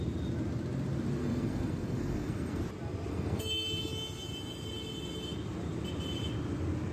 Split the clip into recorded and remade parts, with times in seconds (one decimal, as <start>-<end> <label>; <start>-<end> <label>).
0.0-1.2 recorded; 1.2-2.6 remade; 2.6-3.1 recorded; 3.1-3.8 remade; 3.8-6.9 recorded